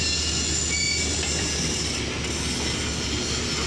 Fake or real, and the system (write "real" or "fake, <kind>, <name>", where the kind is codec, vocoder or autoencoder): real